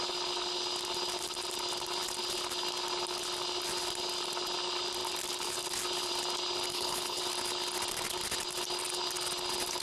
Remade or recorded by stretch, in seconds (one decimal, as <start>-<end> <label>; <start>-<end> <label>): 0.0-6.7 recorded; 6.7-7.2 remade; 7.2-9.8 recorded